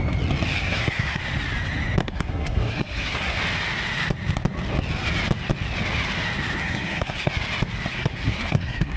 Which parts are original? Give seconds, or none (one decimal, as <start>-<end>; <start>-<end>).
0.0-0.6; 1.2-2.0; 3.4-6.6; 7.3-7.9